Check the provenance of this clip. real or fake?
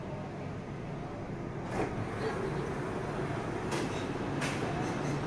real